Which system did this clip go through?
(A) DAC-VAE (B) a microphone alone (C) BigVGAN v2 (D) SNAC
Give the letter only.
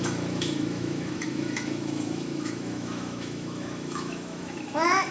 A